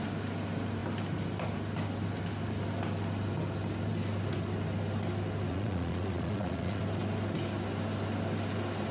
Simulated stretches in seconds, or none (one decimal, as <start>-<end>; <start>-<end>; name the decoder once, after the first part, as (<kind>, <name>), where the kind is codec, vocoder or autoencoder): 5.5-6.8 (vocoder, Vocos)

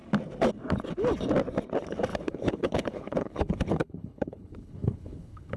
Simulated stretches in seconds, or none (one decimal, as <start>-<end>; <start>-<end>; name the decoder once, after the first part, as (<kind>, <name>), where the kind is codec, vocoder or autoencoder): 2.1-5.6 (codec, HILCodec)

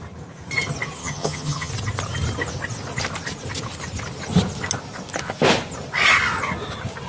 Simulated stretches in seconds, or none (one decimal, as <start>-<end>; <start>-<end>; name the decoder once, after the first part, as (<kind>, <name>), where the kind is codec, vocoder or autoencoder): 1.0-1.7 (vocoder, HiFi-GAN)